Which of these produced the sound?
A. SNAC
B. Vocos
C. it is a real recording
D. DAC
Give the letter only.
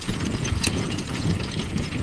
B